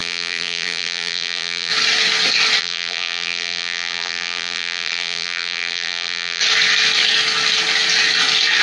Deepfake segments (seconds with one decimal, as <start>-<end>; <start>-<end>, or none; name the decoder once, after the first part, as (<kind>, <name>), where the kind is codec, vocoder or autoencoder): 0.0-1.7 (vocoder, BigVGAN v2); 2.6-6.4